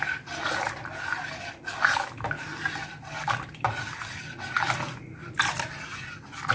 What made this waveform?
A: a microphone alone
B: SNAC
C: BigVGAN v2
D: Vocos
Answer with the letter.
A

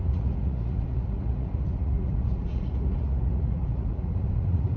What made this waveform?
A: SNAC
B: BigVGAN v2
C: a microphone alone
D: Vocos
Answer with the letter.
D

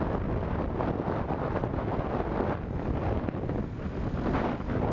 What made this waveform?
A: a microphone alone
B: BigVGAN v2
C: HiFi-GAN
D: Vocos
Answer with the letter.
A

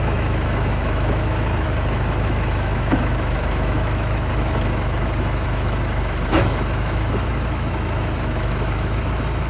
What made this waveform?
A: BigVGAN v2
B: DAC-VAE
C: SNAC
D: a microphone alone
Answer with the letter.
B